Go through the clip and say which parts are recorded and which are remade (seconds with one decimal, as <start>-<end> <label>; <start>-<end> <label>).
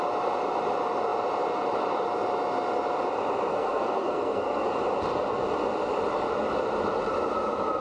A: 0.0-3.5 recorded; 3.5-4.7 remade; 4.7-7.8 recorded